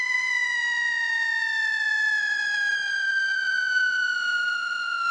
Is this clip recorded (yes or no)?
no